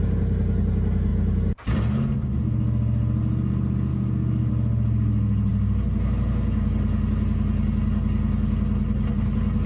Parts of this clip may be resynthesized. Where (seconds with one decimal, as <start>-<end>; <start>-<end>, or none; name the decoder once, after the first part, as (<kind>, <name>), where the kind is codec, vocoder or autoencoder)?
3.9-4.5 (codec, DAC)